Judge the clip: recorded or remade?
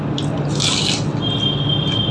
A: recorded